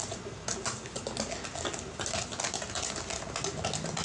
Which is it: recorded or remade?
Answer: recorded